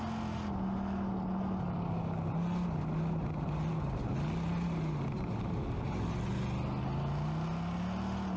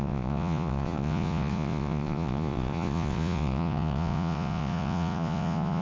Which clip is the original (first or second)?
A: first